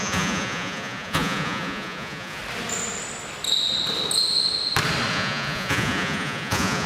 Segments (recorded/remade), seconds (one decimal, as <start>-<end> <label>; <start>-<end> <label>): 0.0-2.4 remade; 2.4-5.1 recorded; 5.1-6.9 remade